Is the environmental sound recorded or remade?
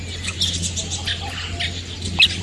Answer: recorded